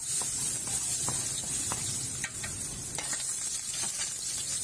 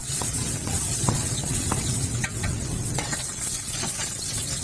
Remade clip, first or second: second